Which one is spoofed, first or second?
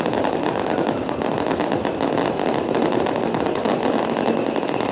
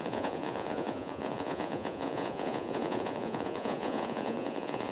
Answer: second